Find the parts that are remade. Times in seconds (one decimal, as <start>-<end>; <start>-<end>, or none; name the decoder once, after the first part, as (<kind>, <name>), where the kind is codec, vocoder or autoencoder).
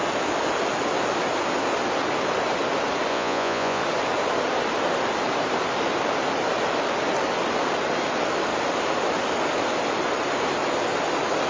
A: 3.1-3.8 (vocoder, Vocos)